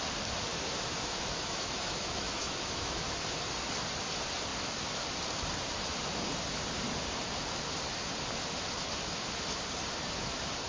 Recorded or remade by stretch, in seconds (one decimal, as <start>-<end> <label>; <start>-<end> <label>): 0.0-0.5 recorded; 0.5-3.1 remade; 3.1-10.7 recorded